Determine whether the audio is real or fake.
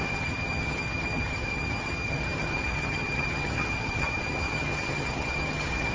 fake